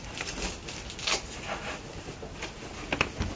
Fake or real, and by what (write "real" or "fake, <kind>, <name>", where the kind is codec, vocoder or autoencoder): real